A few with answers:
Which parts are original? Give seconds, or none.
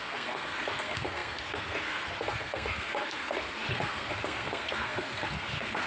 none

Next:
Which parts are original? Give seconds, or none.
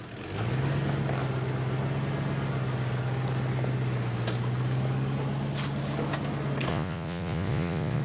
0.0-6.7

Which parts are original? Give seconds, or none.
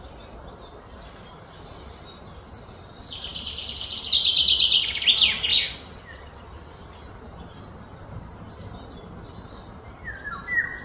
0.0-10.8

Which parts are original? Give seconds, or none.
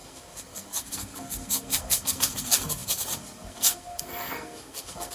none